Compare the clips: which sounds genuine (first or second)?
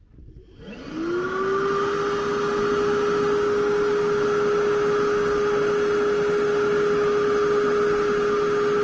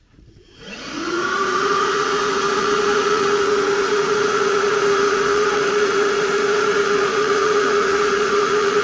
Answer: first